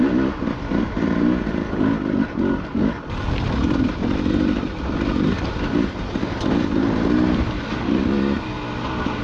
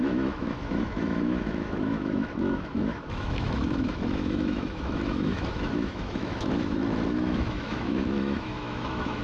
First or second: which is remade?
second